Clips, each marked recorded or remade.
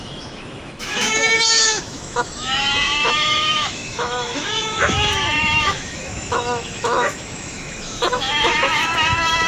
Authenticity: remade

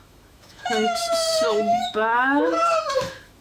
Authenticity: remade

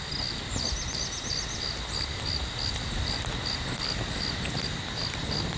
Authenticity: recorded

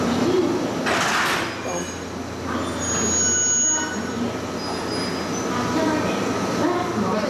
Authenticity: recorded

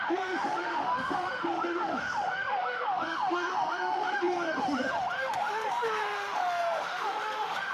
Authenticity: remade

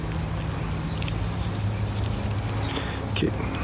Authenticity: recorded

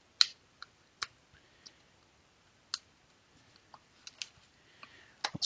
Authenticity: recorded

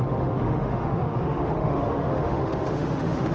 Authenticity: remade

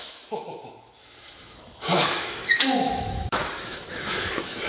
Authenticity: remade